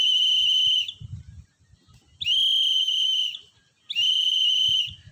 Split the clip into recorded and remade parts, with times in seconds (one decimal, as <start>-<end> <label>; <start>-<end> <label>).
0.0-5.1 recorded